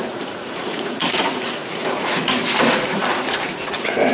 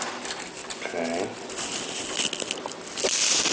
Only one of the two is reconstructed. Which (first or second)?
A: first